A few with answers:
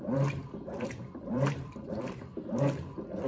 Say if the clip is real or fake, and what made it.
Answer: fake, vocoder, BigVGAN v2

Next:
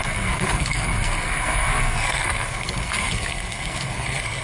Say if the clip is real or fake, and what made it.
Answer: fake, codec, SNAC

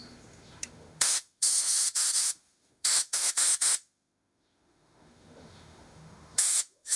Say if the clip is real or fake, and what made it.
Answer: fake, autoencoder, DAC-VAE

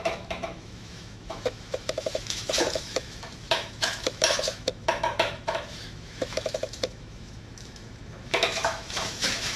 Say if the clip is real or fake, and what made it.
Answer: fake, autoencoder, DAC-VAE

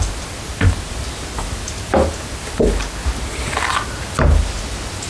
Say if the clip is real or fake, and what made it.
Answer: real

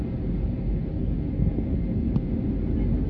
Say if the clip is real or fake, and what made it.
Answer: real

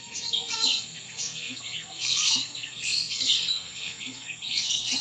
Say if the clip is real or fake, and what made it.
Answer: fake, codec, SNAC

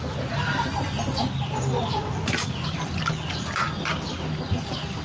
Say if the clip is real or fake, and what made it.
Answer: real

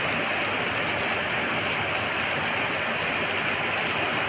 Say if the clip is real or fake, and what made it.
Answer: real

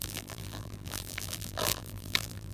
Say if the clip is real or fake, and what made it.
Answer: fake, vocoder, BigVGAN v2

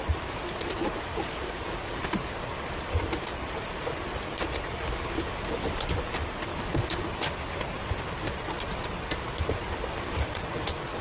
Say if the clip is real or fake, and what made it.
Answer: real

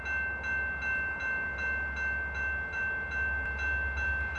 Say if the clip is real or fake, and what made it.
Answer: real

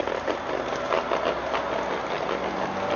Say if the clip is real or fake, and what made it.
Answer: real